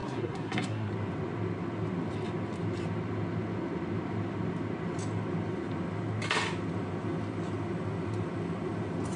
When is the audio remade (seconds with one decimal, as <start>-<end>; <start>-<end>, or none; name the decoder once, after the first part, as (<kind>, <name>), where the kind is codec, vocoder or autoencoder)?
0.0-0.9 (codec, SNAC)